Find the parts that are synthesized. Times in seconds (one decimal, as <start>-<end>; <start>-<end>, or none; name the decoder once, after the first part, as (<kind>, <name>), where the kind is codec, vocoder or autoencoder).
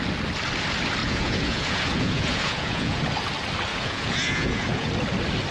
1.0-3.0 (vocoder, Vocos); 3.7-4.9